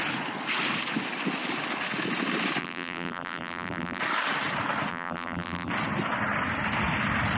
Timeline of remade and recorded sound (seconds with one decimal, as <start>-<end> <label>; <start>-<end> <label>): 0.0-2.6 recorded; 2.6-4.0 remade; 4.0-4.9 recorded; 4.9-5.7 remade; 5.7-7.4 recorded